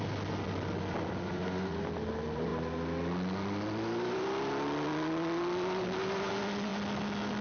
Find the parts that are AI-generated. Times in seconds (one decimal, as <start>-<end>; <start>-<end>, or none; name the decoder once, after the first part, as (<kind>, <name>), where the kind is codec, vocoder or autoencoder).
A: none